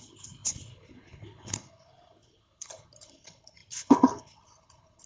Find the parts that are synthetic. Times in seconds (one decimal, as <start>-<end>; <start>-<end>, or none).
0.0-5.1